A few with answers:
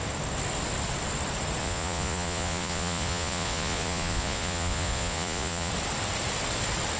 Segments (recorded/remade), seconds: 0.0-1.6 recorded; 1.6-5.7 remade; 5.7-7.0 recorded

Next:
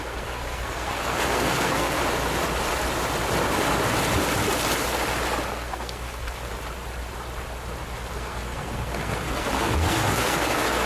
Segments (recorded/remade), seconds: 0.0-2.0 remade; 2.0-5.5 recorded; 5.5-6.5 remade; 6.5-8.1 recorded; 8.1-10.9 remade

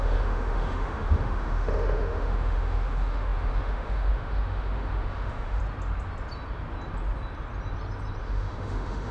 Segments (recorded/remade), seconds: 0.0-5.6 remade; 5.6-8.2 recorded; 8.2-9.1 remade

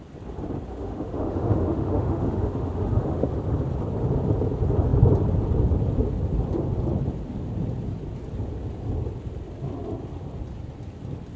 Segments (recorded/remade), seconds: 0.0-0.7 recorded; 0.7-3.3 remade; 3.3-11.4 recorded

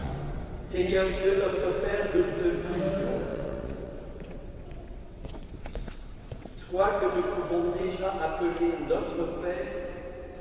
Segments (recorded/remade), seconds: 0.0-2.4 remade; 2.4-3.3 recorded; 3.3-8.1 remade; 8.1-10.4 recorded